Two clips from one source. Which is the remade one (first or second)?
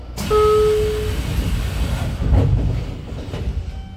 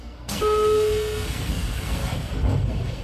second